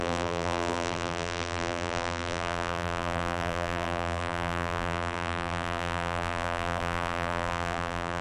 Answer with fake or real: fake